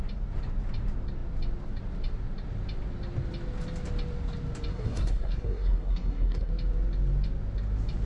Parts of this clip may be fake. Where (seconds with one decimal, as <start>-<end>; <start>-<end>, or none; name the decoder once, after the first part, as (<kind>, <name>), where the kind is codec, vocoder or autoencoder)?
4.7-6.5 (codec, SNAC)